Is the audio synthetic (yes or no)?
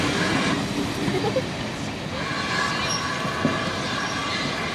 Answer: no